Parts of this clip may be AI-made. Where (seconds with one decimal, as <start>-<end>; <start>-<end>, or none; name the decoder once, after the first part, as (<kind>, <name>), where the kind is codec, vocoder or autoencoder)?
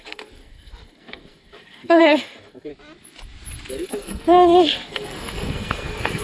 0.0-2.7 (codec, SNAC); 3.7-6.2